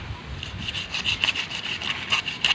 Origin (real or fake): real